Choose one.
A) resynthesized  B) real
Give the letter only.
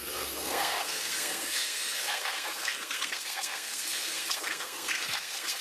A